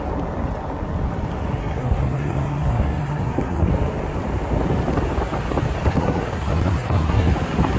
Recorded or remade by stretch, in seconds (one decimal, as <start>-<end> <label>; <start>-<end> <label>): 0.0-1.6 recorded; 1.6-3.7 remade; 3.7-5.9 recorded; 5.9-7.3 remade; 7.3-7.8 recorded